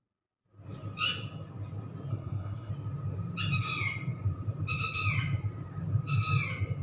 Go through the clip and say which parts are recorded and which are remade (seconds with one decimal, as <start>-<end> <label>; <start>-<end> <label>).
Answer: 0.0-2.1 recorded; 2.1-2.7 remade; 2.7-6.8 recorded